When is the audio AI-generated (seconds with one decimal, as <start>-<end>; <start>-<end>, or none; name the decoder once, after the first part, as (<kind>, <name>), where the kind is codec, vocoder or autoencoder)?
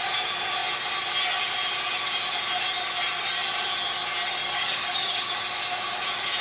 4.4-5.4 (codec, DAC)